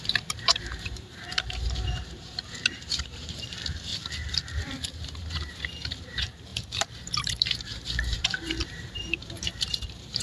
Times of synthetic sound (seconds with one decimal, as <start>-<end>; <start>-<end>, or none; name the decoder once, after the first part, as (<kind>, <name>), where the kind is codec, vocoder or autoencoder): 0.0-3.9 (vocoder, BigVGAN v2); 4.8-10.2